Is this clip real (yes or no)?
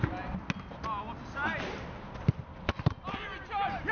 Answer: yes